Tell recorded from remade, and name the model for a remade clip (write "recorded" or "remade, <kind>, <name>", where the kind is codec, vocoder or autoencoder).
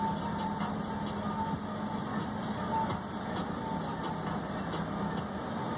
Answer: recorded